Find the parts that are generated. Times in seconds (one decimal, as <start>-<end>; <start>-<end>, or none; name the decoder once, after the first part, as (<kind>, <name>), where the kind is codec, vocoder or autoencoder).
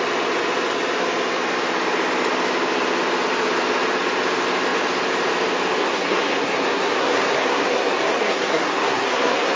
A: 5.8-9.6 (codec, SNAC)